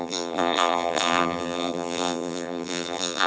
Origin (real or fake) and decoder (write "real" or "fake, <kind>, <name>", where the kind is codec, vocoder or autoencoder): fake, vocoder, BigVGAN v2